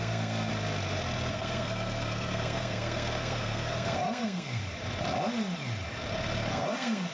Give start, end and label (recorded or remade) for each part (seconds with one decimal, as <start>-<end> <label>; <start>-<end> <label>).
0.0-0.5 remade; 0.5-1.3 recorded; 1.3-4.6 remade; 4.6-6.5 recorded; 6.5-7.1 remade